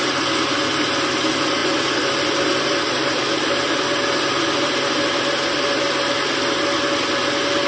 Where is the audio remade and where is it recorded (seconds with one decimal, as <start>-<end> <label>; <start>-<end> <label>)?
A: 0.0-7.7 recorded